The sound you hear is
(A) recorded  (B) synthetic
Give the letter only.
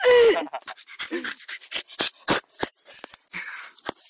A